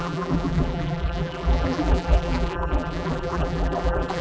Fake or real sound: fake